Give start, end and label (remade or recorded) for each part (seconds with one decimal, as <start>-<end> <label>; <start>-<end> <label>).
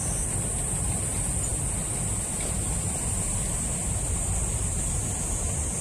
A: 0.0-5.8 recorded